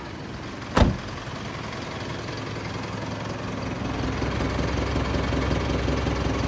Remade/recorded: recorded